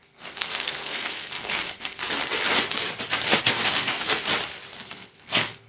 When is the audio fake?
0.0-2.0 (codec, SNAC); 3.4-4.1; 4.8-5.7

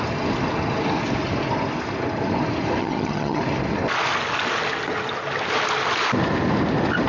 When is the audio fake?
2.8-3.4 (vocoder, HiFi-GAN)

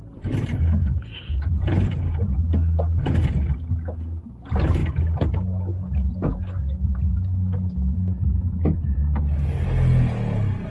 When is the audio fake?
0.8-2.3 (vocoder, Vocos)

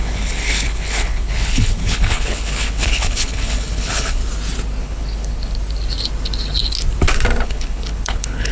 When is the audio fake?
0.0-4.2 (codec, HILCodec); 4.8-5.6; 7.4-8.5